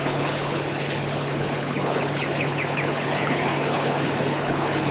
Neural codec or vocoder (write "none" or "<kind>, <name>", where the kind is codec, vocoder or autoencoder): codec, HILCodec